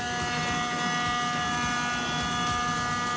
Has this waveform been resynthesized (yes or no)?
no